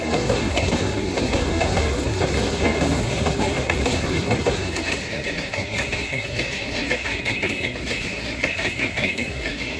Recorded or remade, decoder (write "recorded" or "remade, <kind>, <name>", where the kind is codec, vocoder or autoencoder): remade, codec, SNAC